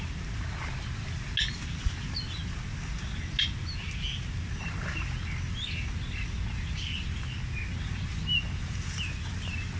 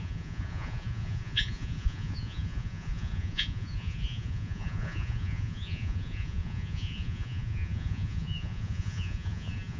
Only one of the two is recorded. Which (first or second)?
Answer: first